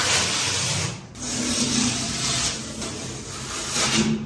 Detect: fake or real real